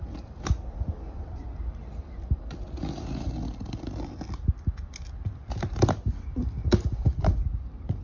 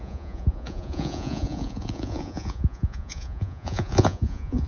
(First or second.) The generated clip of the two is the second